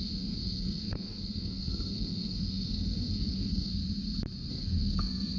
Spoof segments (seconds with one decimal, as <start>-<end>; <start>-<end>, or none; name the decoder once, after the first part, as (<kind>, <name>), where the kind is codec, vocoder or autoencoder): 0.0-3.7 (codec, SNAC); 4.5-5.4